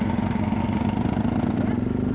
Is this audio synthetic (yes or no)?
no